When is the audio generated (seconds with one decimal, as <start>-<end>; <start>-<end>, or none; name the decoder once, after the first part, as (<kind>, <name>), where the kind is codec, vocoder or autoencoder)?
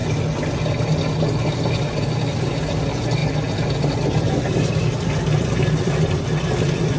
none